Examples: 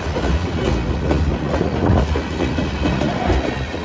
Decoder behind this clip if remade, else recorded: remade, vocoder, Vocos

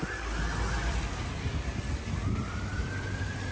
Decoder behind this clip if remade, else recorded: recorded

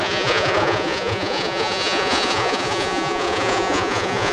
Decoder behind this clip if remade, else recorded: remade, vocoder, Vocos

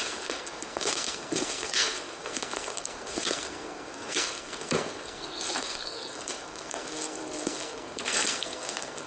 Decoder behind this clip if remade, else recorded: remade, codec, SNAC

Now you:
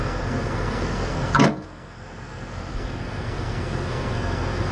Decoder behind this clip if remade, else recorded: remade, codec, SNAC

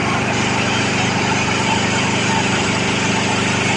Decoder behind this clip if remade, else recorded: remade, vocoder, BigVGAN v2